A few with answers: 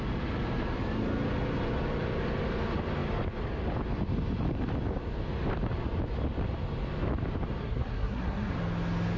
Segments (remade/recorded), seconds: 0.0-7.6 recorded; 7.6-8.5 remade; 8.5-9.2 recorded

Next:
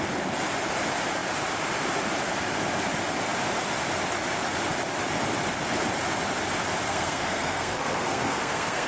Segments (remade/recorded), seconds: 0.0-6.9 recorded; 6.9-8.9 remade

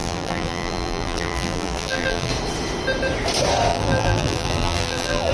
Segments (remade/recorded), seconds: 0.0-2.3 remade; 2.3-3.7 recorded; 3.7-5.3 remade

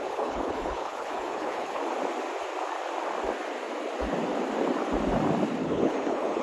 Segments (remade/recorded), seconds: 0.0-1.8 remade; 1.8-5.6 recorded; 5.6-6.4 remade

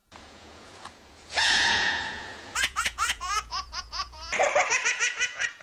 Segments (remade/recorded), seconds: 0.0-4.2 remade; 4.2-4.7 recorded; 4.7-5.6 remade

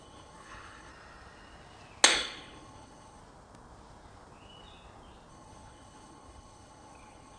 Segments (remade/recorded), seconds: 0.0-0.9 remade; 0.9-2.1 recorded; 2.1-3.2 remade; 3.2-5.3 recorded; 5.3-7.4 remade

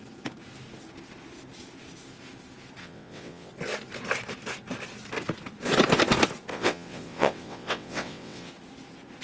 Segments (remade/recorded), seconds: 0.0-2.8 recorded; 2.8-3.5 remade; 3.5-6.5 recorded; 6.5-8.5 remade; 8.5-9.2 recorded